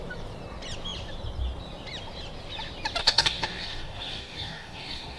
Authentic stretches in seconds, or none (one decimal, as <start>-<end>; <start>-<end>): 0.0-3.0